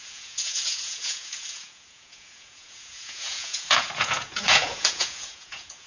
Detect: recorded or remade remade